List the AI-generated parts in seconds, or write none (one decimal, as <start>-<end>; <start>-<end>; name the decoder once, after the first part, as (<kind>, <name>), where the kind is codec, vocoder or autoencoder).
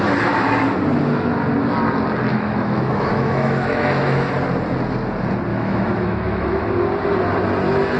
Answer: 2.3-4.3 (autoencoder, DAC-VAE); 5.5-6.6